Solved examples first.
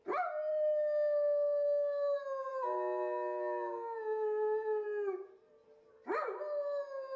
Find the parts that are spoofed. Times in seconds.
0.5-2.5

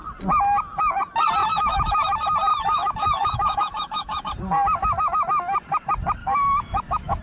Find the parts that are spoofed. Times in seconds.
1.4-1.9; 2.5-4.3; 6.2-7.2

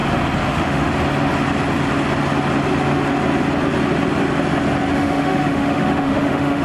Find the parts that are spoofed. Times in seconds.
0.5-0.9; 4.9-6.6

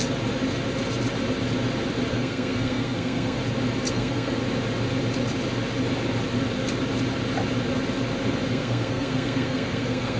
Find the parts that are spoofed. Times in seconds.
2.1-3.4; 3.9-4.4; 8.5-10.2

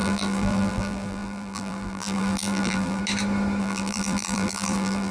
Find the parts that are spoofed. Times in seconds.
0.0-3.0; 3.6-5.1

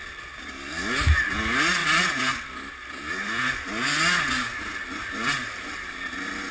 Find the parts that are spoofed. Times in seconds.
none

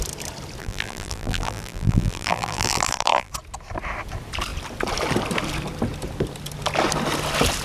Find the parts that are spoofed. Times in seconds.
0.6-3.3